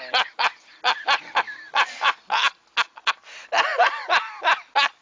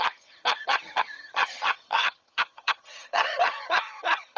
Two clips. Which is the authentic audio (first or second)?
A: first